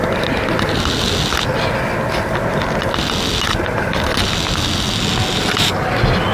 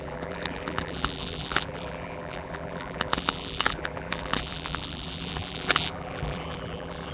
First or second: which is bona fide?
first